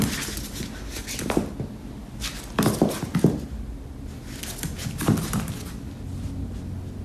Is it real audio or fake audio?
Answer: real